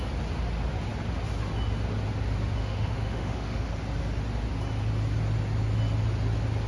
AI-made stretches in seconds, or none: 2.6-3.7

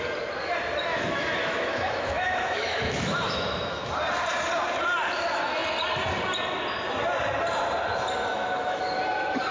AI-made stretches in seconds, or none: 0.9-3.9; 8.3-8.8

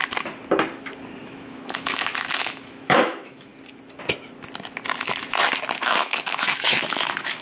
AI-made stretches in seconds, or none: 1.2-3.5; 5.8-7.4